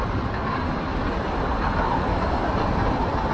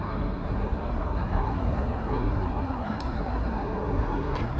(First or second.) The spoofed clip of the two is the second